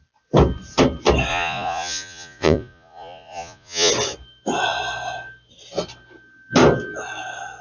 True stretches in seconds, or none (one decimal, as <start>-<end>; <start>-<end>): 0.0-1.3; 3.9-7.6